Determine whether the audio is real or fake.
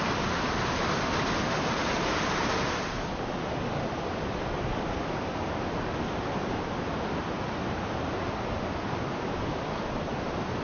real